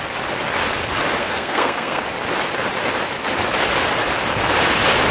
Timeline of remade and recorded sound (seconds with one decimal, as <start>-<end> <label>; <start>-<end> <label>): 0.0-1.2 recorded; 1.2-2.0 remade; 2.0-5.1 recorded